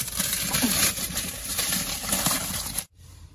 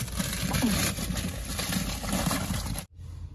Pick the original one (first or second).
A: second